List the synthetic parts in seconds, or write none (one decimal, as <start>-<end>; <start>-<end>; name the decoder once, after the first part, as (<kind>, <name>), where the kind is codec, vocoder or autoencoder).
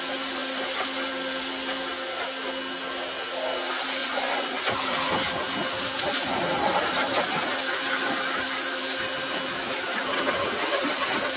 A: 4.0-4.7 (vocoder, Vocos)